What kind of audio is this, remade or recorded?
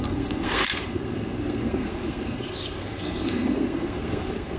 remade